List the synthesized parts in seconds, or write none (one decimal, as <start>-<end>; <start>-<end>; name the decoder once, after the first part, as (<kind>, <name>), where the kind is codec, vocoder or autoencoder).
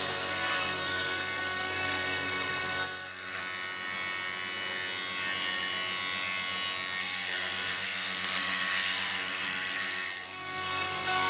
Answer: 0.0-3.4 (codec, SNAC); 7.0-11.3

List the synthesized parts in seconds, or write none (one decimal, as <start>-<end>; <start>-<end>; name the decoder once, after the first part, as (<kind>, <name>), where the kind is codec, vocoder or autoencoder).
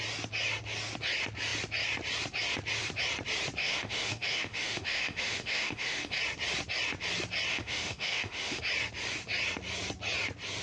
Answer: 3.6-6.2 (autoencoder, DAC-VAE); 7.5-8.6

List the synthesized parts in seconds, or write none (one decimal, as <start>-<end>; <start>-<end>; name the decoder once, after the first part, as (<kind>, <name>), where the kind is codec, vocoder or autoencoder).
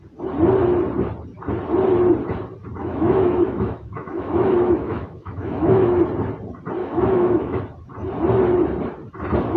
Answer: 2.8-6.0 (autoencoder, DAC-VAE); 6.8-7.6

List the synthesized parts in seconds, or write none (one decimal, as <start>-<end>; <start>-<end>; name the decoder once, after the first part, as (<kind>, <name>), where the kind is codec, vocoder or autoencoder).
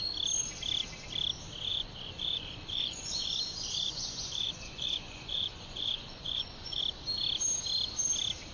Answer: 1.7-6.8 (vocoder, Vocos)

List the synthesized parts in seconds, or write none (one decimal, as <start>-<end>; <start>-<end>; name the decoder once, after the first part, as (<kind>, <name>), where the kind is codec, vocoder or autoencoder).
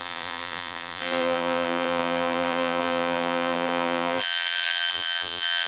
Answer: 0.0-5.7 (vocoder, BigVGAN v2)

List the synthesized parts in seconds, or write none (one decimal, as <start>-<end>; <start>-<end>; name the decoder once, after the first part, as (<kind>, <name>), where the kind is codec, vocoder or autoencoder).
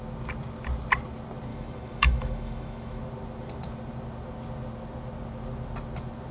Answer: 1.5-3.0 (autoencoder, DAC-VAE)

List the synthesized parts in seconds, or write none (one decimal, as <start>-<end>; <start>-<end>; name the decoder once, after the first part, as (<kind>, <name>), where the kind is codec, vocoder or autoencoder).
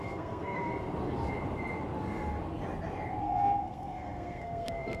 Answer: 0.0-0.7 (codec, SNAC); 3.2-5.0